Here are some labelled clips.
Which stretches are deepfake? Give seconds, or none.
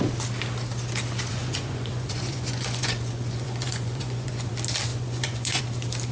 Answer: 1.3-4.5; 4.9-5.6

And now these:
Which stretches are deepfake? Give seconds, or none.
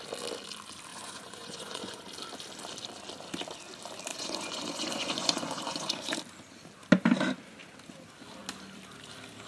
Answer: 0.9-2.0; 4.1-6.2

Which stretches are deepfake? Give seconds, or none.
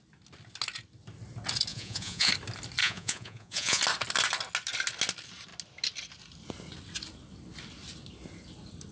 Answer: 1.7-2.3; 2.8-3.8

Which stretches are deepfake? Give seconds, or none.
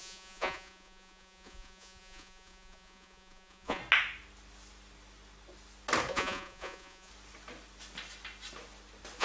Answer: 0.0-3.8; 6.1-7.1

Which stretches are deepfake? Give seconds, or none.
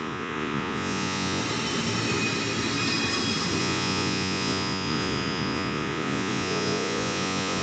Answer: 0.0-1.4; 3.6-7.6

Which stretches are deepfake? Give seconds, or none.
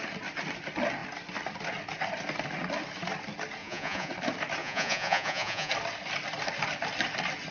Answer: 3.6-4.1; 4.6-5.7